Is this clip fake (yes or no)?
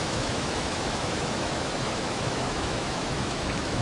yes